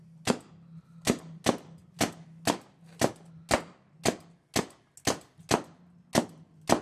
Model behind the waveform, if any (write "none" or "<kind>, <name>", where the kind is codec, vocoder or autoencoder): none